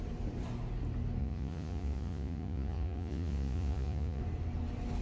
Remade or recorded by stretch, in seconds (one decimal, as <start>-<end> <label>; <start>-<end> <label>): 0.0-1.2 recorded; 1.2-4.2 remade; 4.2-5.0 recorded